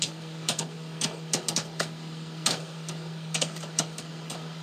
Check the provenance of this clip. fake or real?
fake